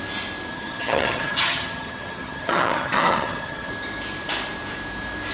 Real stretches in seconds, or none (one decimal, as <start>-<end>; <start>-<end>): 0.0-0.5; 3.7-5.3